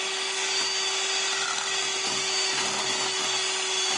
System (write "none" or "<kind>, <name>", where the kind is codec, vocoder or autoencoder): none